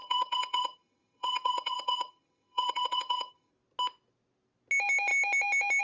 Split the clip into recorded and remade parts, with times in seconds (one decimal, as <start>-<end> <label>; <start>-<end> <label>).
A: 0.0-3.5 remade; 3.5-5.8 recorded